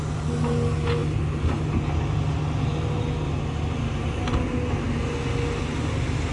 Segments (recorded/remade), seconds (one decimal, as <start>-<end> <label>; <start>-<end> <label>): 0.0-6.3 recorded